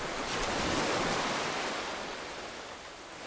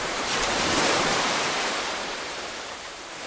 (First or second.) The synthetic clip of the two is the second